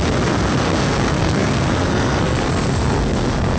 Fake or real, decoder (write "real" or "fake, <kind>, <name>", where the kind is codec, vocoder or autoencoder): fake, codec, SNAC